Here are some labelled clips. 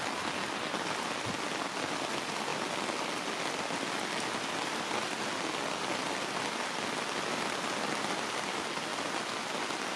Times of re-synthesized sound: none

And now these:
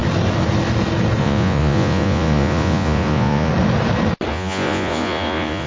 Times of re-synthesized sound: 1.2-3.5; 4.3-5.7

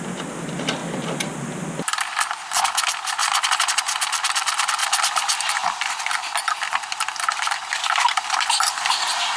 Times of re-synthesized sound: none